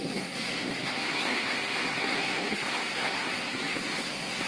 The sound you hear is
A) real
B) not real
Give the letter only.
B